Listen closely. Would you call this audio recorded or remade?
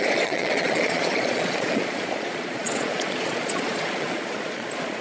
remade